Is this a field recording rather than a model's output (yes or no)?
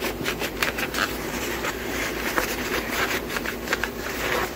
no